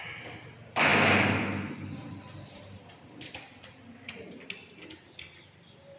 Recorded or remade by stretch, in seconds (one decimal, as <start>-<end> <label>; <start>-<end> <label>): 0.0-6.0 recorded